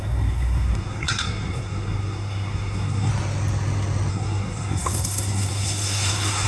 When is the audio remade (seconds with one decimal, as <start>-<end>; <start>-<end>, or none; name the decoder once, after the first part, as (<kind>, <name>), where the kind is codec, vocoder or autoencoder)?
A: 0.0-3.1 (codec, SNAC); 4.1-6.5